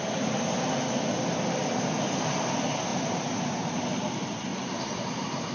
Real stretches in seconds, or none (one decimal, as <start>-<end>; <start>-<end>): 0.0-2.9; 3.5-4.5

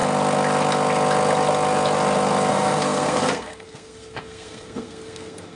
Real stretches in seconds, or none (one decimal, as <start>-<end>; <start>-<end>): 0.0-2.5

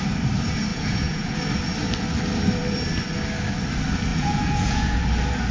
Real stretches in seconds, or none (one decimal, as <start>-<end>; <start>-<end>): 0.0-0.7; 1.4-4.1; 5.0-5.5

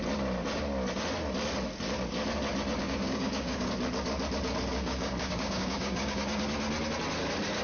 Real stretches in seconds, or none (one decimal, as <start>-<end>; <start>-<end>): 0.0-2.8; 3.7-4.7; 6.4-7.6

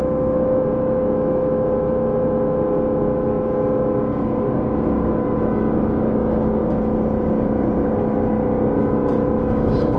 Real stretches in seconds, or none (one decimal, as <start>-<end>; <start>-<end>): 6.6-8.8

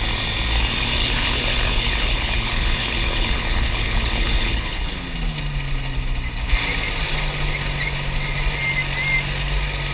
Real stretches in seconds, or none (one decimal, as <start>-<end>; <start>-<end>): 0.0-1.0; 4.9-9.9

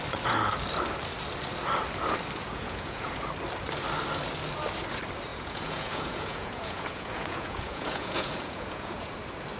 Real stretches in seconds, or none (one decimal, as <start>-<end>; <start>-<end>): 0.0-2.4; 3.1-5.3; 9.1-9.6

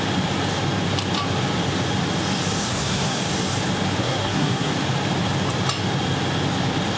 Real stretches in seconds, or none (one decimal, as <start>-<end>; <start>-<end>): 0.0-2.6; 3.2-4.0; 4.7-7.0